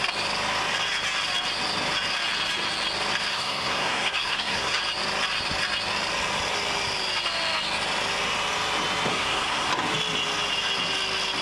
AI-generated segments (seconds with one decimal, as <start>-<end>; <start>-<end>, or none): 3.3-4.8; 9.1-9.7